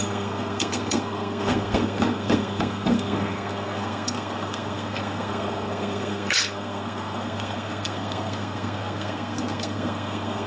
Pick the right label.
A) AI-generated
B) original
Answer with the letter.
A